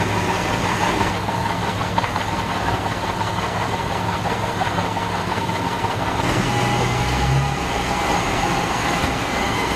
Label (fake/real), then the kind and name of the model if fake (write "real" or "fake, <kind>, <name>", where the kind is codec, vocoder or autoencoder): fake, codec, SNAC